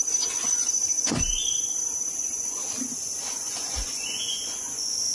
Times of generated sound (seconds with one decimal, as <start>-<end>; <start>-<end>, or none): 0.0-2.6; 3.3-5.1